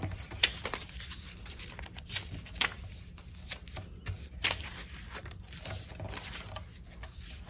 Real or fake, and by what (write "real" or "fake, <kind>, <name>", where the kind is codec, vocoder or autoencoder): real